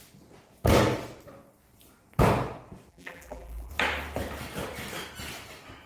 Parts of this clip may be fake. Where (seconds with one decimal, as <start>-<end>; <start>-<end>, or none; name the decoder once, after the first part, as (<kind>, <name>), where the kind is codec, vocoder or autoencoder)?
2.9-3.7 (vocoder, BigVGAN v2)